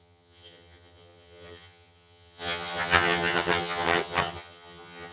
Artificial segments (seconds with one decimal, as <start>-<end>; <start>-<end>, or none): 0.0-5.1